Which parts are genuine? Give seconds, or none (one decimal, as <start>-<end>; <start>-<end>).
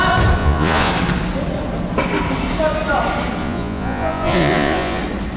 0.0-0.4; 0.9-3.4; 5.0-5.4